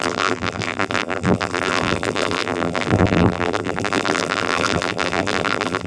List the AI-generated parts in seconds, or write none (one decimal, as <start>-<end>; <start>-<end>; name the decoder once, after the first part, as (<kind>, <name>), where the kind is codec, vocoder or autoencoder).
0.0-5.9 (vocoder, BigVGAN v2)